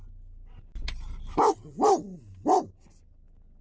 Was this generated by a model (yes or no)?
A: no